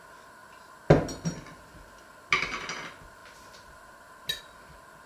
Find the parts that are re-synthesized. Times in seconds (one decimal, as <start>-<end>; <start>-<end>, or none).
none